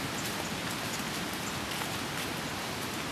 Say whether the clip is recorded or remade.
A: remade